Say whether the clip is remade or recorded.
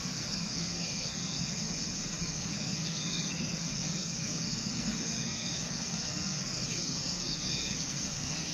remade